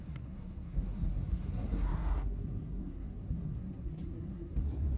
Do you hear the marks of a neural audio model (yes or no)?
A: yes